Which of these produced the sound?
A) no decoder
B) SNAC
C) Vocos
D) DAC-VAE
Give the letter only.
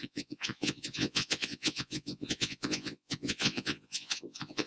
C